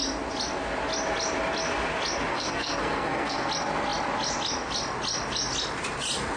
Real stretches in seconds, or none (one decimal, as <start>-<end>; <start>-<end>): 0.0-2.3; 3.5-6.4